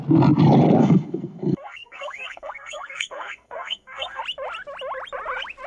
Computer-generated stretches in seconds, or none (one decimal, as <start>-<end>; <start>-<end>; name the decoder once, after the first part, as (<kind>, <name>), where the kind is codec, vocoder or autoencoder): 0.8-4.2 (codec, SNAC)